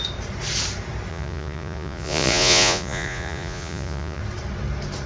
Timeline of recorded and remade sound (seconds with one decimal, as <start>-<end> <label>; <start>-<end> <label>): 0.0-1.1 recorded; 1.1-4.2 remade; 4.2-5.1 recorded